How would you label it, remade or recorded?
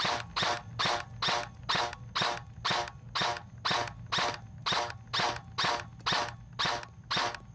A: recorded